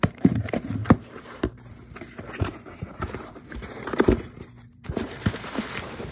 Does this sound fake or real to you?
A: fake